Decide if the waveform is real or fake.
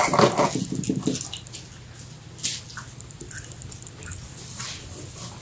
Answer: real